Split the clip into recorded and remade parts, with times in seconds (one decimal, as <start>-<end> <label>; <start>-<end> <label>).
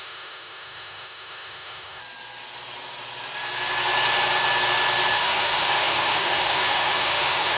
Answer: 0.0-2.0 remade; 2.0-5.1 recorded; 5.1-7.6 remade